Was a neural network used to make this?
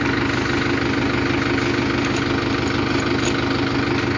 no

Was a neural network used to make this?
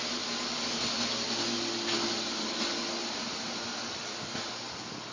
no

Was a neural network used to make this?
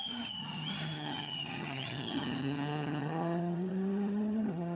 yes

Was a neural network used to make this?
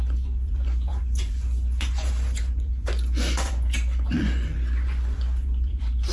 yes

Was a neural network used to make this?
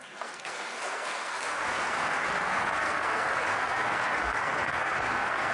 yes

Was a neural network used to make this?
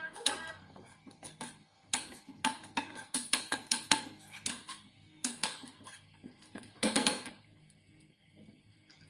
yes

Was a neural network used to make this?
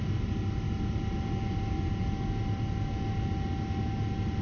no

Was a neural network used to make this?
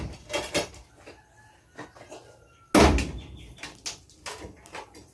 no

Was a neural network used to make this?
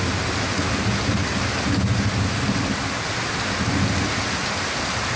no